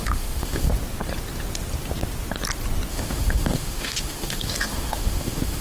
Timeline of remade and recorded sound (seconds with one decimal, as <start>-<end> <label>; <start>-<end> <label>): 0.0-0.7 remade; 0.7-2.9 recorded; 2.9-5.6 remade

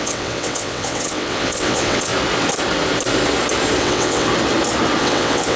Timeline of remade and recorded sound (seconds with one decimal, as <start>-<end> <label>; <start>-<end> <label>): 0.0-2.1 remade; 2.1-3.8 recorded; 3.8-4.3 remade; 4.3-5.0 recorded; 5.0-5.6 remade